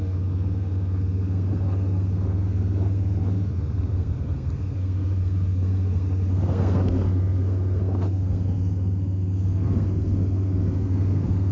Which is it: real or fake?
fake